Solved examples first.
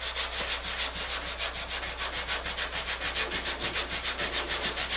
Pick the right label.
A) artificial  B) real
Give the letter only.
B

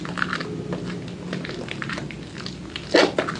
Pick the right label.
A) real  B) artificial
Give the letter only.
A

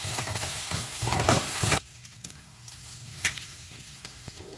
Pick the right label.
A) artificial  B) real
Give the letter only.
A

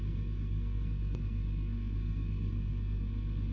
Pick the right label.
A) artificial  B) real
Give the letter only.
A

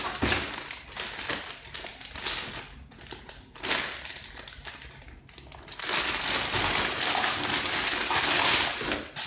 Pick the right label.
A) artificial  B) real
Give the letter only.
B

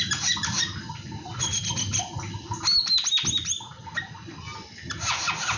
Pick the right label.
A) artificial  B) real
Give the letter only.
B